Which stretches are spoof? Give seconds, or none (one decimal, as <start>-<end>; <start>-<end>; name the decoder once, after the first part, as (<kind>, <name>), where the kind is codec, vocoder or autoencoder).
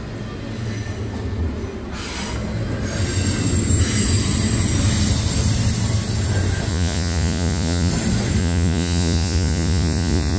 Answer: 6.7-7.9 (vocoder, Vocos); 8.4-10.4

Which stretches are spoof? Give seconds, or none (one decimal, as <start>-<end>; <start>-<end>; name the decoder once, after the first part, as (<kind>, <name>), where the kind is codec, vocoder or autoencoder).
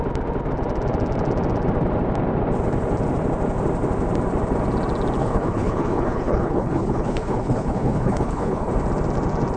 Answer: 5.2-8.7 (codec, HILCodec)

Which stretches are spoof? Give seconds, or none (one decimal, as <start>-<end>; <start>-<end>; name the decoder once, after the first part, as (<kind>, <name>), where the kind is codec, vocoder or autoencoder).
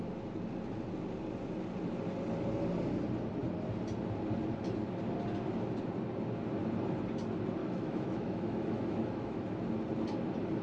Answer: 7.6-9.4 (autoencoder, DAC-VAE)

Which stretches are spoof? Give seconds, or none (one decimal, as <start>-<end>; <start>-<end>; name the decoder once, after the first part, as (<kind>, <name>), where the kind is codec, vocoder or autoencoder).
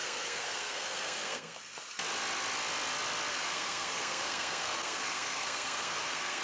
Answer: 0.0-1.6 (codec, SNAC); 3.3-6.4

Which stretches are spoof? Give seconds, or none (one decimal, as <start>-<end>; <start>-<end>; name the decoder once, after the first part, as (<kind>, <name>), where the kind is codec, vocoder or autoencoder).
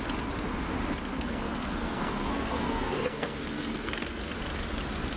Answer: 1.1-4.2 (codec, SNAC)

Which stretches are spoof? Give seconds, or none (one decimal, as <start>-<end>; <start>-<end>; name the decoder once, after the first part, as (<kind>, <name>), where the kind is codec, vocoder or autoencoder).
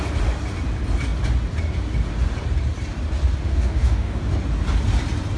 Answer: 3.5-4.2 (codec, DAC)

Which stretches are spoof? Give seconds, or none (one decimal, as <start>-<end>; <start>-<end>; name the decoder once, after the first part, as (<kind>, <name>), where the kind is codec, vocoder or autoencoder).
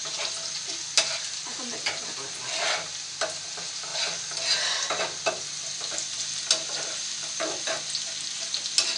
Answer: none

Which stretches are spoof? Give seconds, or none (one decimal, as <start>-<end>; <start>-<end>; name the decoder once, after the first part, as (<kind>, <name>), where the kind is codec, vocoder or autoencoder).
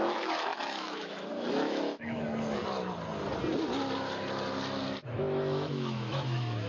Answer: 0.0-2.6 (autoencoder, DAC-VAE); 5.0-6.7